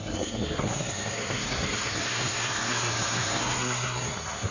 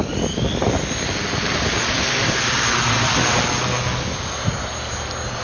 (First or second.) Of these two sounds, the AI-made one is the first